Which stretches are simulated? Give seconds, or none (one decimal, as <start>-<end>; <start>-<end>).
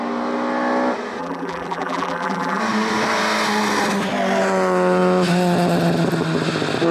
1.2-2.6